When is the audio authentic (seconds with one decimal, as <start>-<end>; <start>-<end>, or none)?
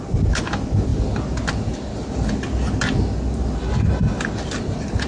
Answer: 0.0-5.1